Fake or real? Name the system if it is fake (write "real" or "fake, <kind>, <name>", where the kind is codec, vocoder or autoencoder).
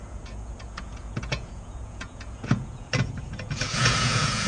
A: fake, vocoder, Vocos